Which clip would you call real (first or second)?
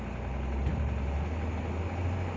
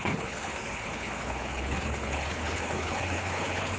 first